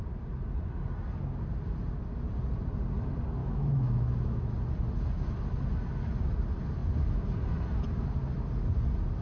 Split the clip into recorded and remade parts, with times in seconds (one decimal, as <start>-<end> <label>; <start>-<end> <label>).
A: 0.0-3.4 recorded; 3.4-4.5 remade; 4.5-9.2 recorded